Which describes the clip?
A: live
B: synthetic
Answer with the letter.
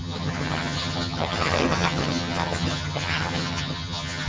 B